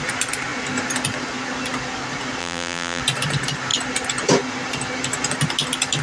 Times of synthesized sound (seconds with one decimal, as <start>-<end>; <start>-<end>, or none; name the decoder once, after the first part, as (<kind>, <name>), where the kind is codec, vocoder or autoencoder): 2.4-3.0 (vocoder, BigVGAN v2)